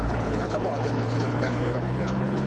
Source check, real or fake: fake